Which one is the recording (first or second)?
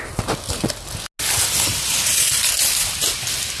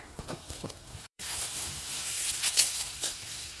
first